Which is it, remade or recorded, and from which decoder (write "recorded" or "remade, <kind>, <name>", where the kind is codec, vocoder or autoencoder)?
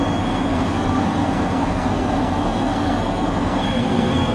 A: remade, codec, SNAC